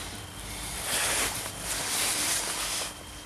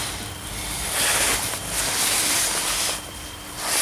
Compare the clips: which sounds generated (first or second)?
second